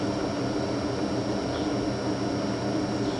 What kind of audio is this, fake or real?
real